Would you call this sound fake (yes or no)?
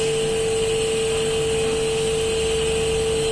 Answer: no